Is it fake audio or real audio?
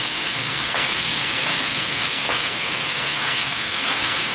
fake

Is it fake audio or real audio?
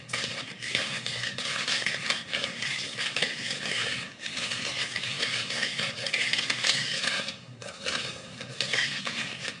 fake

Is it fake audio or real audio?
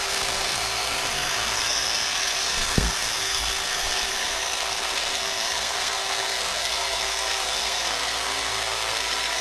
fake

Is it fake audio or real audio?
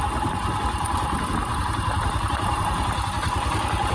real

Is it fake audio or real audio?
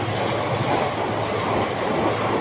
real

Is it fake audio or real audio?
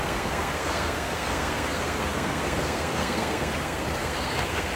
fake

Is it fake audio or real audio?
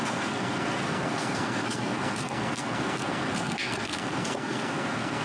fake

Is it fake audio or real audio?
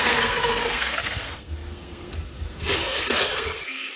fake